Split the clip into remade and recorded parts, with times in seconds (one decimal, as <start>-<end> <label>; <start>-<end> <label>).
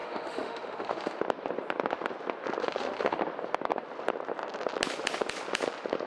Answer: 0.0-1.2 remade; 1.2-2.6 recorded; 2.6-3.2 remade; 3.2-6.1 recorded